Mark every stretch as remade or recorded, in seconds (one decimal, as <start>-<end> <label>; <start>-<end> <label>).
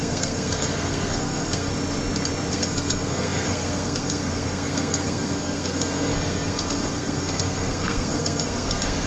0.0-1.7 remade; 1.7-2.5 recorded; 2.5-9.1 remade